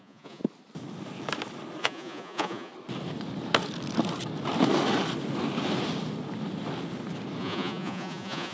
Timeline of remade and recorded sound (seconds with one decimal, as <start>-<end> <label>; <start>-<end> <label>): 0.0-0.4 remade; 0.4-1.8 recorded; 1.8-2.7 remade; 2.7-7.4 recorded; 7.4-8.5 remade